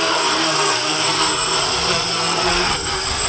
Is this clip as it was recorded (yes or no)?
no